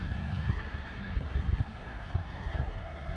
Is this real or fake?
fake